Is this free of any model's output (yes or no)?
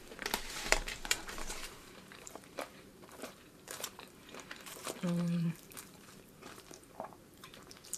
no